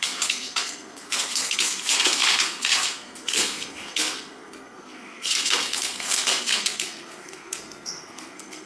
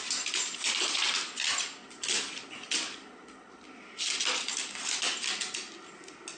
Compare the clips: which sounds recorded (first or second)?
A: second